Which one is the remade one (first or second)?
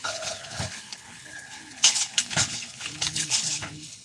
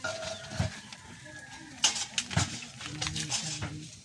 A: first